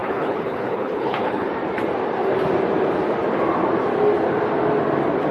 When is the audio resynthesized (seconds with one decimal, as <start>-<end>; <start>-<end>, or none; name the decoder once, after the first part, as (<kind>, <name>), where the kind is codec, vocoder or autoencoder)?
0.0-1.5 (codec, HILCodec)